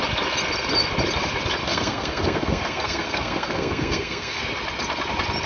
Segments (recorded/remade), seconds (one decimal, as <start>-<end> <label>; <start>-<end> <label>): 0.0-1.6 recorded; 1.6-4.4 remade; 4.4-5.5 recorded